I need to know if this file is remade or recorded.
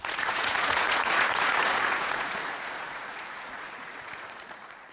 remade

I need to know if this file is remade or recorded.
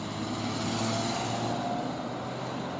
recorded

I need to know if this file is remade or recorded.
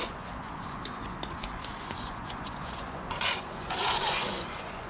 remade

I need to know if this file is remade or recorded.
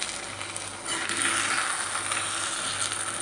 recorded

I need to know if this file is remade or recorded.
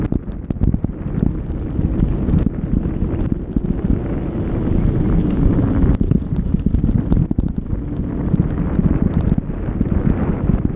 recorded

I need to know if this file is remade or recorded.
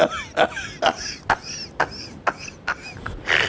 recorded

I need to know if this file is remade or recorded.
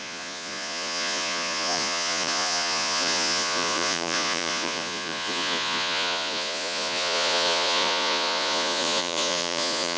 remade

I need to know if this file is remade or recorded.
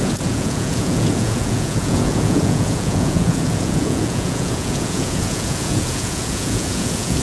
remade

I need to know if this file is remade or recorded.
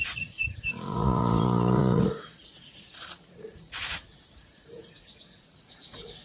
remade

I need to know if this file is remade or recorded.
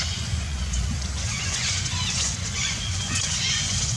remade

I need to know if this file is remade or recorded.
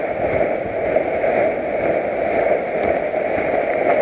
recorded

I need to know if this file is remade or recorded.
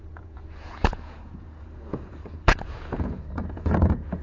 remade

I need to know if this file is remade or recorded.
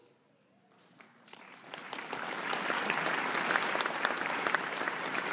recorded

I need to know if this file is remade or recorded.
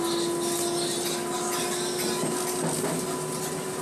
recorded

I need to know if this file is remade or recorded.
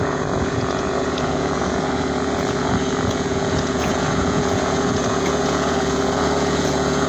remade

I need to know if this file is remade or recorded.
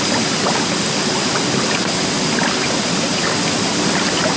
recorded